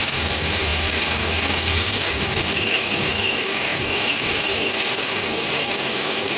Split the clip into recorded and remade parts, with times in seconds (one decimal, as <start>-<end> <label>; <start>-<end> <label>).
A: 0.0-6.4 remade